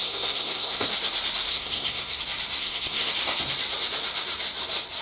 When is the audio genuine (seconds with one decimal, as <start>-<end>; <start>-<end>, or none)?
0.9-1.5; 2.2-2.6; 3.1-5.0